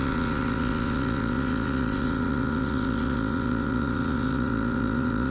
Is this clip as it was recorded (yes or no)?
no